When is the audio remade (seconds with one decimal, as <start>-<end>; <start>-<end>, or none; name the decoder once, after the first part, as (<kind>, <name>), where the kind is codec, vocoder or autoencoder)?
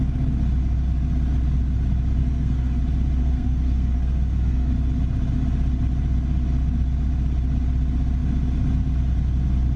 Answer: 2.2-2.8 (codec, SNAC); 3.2-4.7